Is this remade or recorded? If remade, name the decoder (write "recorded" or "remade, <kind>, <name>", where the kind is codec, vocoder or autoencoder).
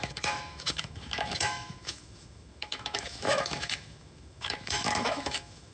remade, autoencoder, DAC-VAE